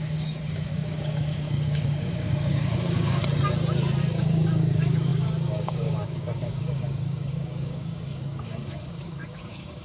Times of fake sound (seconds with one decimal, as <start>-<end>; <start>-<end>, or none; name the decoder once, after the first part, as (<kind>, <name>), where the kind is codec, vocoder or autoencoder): 0.0-3.2 (codec, DAC); 4.0-9.8